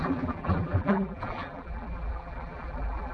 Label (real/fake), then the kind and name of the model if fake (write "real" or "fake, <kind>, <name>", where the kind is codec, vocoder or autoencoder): fake, vocoder, BigVGAN v2